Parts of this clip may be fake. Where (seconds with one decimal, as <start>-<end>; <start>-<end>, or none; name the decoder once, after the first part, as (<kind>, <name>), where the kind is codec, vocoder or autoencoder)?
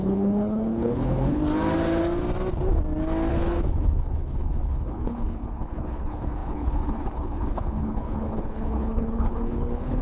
0.0-1.4 (codec, HILCodec); 3.3-10.0